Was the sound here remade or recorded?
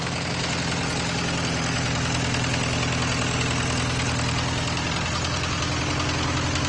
recorded